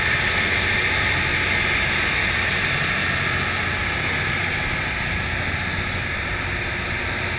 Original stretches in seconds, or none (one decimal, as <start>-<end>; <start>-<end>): 1.3-2.2; 3.0-6.0